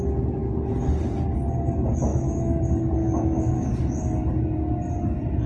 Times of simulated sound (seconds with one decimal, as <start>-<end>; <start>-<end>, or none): 2.1-2.6; 3.0-3.7